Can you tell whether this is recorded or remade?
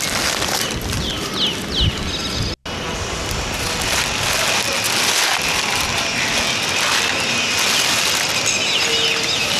recorded